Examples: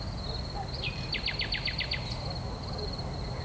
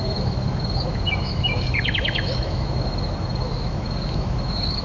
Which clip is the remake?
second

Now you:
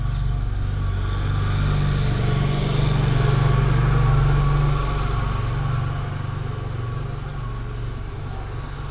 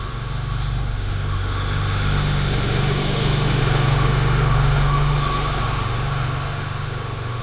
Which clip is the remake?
second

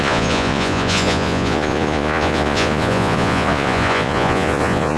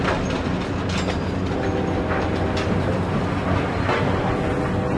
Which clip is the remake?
first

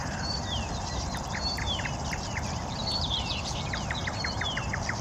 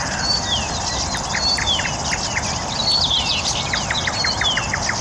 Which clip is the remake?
first